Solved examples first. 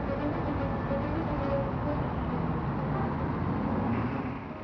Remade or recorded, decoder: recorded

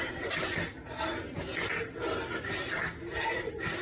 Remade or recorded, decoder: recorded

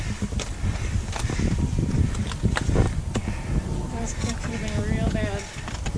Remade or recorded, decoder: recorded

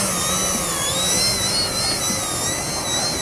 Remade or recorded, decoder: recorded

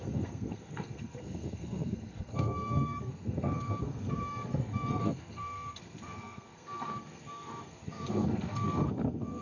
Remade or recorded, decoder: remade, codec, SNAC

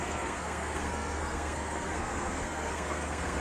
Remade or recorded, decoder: remade, codec, SNAC